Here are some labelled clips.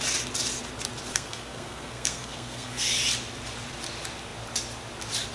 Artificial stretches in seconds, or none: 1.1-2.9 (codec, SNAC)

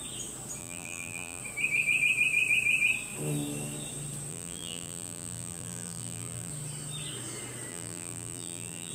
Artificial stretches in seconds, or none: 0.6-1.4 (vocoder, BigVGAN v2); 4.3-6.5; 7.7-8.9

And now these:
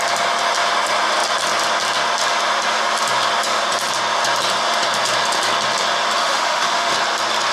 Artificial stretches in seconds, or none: 6.2-6.9 (autoencoder, DAC-VAE)